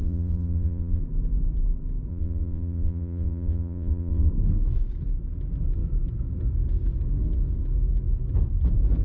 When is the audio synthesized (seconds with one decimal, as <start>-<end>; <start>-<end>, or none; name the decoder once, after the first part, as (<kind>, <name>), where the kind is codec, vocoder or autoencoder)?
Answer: 0.0-1.0 (vocoder, Vocos); 2.1-4.3